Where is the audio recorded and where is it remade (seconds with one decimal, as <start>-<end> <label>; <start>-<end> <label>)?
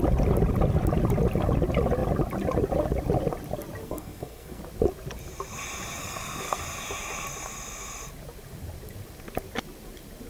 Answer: 0.0-3.8 recorded; 3.8-4.6 remade; 4.6-6.0 recorded; 6.0-6.6 remade; 6.6-10.3 recorded